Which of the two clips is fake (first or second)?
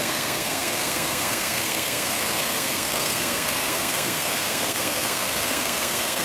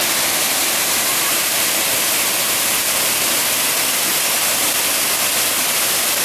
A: first